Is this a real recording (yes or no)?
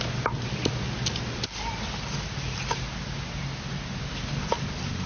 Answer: yes